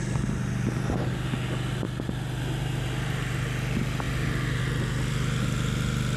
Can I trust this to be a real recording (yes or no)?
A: yes